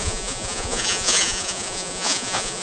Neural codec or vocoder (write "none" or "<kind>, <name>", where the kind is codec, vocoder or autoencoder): vocoder, Vocos